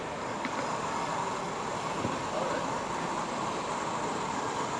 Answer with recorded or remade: recorded